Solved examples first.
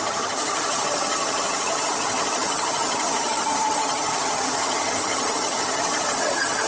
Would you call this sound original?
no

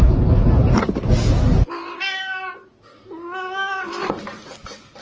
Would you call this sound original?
yes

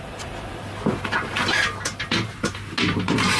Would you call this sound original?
yes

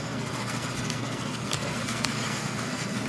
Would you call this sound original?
no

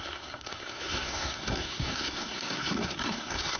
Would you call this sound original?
no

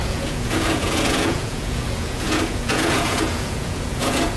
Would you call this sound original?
no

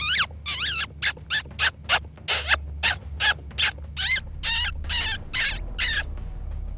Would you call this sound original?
yes